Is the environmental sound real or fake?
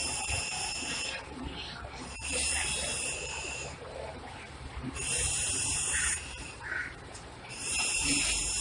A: fake